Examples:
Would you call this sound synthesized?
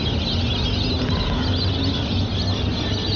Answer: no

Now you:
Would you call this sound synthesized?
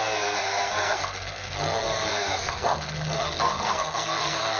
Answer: yes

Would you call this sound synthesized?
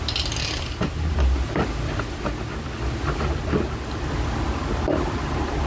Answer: no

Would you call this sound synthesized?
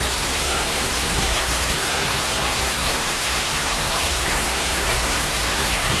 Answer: yes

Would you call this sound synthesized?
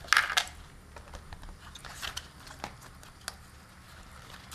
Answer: no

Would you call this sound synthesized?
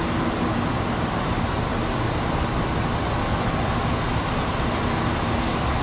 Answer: no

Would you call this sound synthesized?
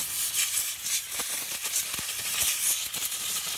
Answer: no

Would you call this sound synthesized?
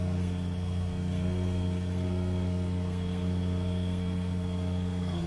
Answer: yes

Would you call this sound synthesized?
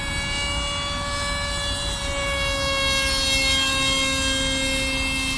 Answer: no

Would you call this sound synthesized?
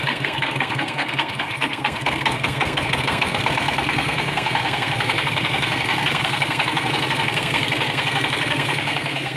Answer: yes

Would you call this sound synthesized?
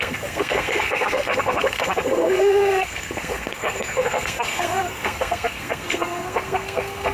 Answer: yes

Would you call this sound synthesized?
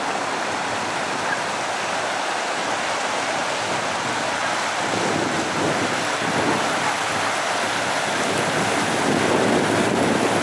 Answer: no